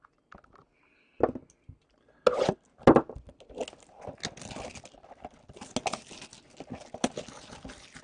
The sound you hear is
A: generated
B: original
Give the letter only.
B